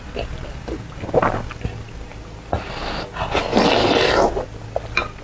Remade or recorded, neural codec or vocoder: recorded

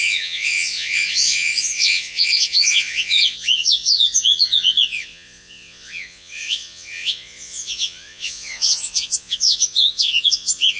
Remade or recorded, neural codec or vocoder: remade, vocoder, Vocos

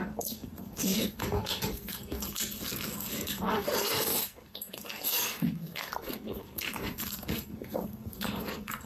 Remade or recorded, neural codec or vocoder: remade, codec, SNAC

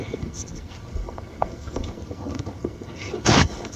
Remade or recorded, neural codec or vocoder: remade, codec, SNAC